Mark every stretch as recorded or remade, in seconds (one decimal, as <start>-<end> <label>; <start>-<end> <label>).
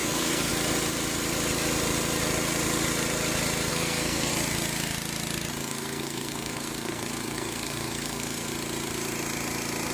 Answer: 0.0-0.5 remade; 0.5-3.7 recorded; 3.7-4.3 remade; 4.3-5.6 recorded; 5.6-8.5 remade; 8.5-9.9 recorded